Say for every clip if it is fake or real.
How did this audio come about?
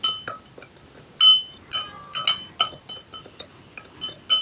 real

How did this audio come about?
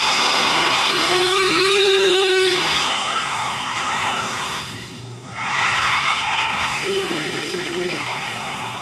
fake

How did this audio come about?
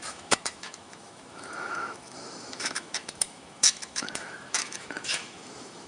fake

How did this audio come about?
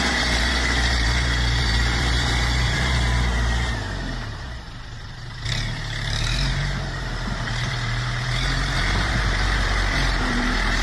fake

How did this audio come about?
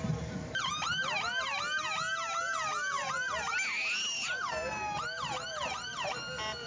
real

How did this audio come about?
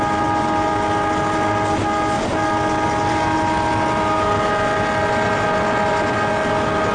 real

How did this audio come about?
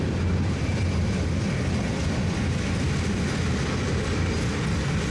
real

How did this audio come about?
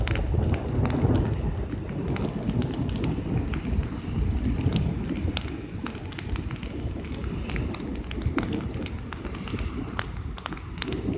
real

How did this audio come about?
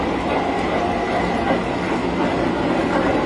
real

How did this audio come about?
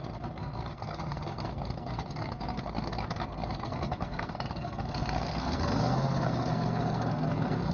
fake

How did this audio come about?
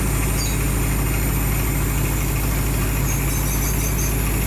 real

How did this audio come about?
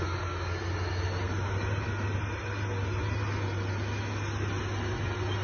real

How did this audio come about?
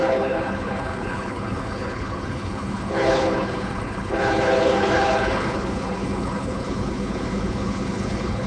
fake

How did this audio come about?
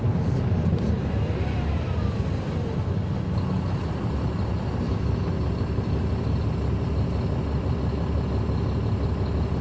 real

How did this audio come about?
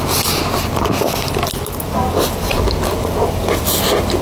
real